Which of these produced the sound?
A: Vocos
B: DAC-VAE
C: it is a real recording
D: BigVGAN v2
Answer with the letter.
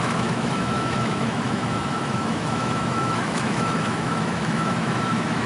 B